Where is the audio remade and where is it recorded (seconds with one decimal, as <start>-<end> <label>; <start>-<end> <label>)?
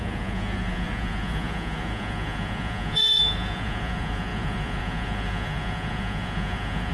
0.0-6.9 remade